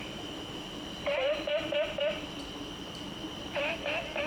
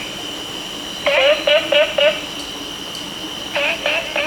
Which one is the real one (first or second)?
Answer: second